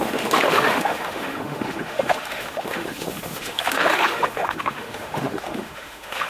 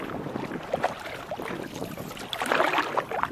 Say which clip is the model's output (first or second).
first